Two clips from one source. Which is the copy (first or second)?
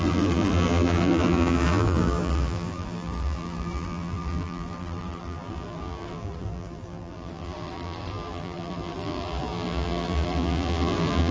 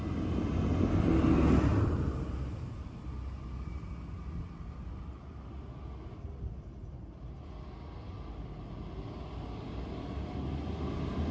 first